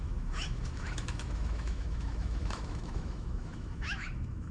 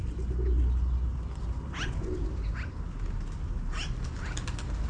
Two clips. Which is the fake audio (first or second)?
first